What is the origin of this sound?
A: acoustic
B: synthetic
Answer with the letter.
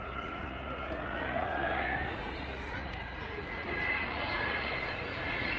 B